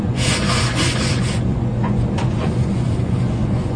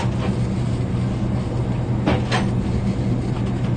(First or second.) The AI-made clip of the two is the first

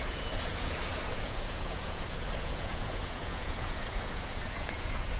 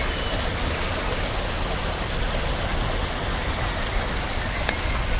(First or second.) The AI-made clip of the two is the first